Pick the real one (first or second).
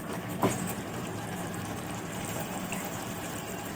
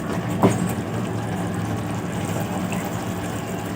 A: second